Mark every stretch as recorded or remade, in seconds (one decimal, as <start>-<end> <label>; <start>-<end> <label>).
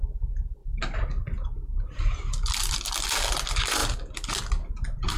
0.0-5.2 recorded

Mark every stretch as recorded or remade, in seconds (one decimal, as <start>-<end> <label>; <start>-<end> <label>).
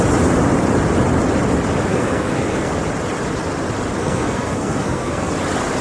0.0-1.9 recorded; 1.9-2.7 remade; 2.7-4.0 recorded; 4.0-5.3 remade; 5.3-5.8 recorded